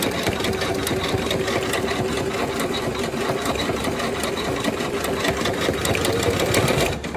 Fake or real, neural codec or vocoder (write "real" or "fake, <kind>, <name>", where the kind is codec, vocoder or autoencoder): real